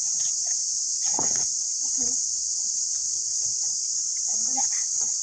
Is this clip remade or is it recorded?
remade